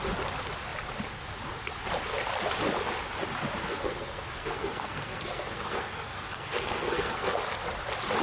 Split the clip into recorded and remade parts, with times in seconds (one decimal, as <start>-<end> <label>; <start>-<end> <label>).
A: 0.0-3.7 recorded; 3.7-7.4 remade; 7.4-8.2 recorded